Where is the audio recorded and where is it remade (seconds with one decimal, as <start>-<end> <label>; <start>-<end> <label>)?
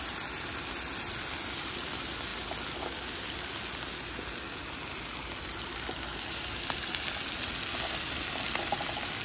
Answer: 0.0-9.2 recorded